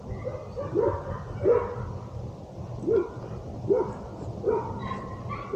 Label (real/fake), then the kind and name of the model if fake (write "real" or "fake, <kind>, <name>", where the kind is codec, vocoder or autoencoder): real